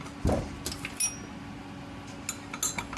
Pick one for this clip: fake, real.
real